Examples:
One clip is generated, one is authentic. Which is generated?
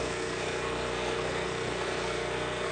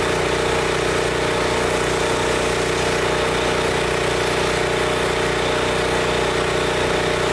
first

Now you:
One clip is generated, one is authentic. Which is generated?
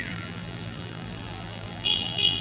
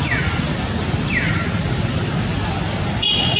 first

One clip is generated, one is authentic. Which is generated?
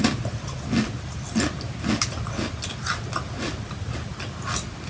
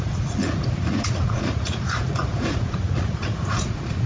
second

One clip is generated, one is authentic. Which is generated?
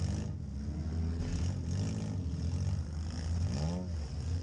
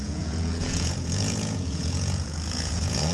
second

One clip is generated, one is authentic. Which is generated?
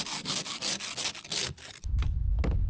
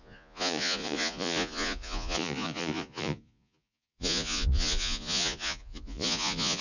second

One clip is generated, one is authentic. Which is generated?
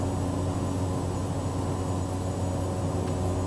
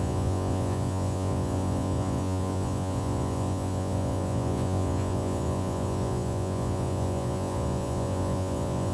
second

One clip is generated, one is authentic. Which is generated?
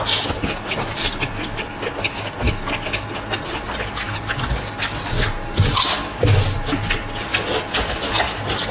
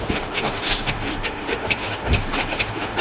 second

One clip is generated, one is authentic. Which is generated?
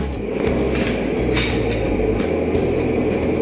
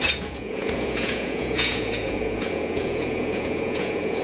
second